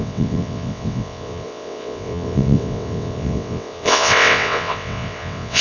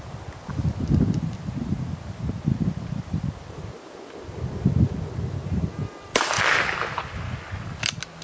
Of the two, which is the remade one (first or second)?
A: first